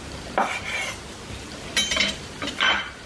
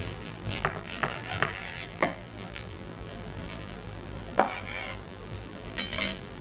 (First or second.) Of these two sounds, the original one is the first